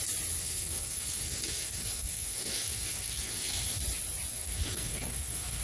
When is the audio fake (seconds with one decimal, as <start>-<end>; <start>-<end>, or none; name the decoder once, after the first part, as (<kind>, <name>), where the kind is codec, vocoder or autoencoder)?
0.4-3.8 (codec, SNAC); 4.3-5.6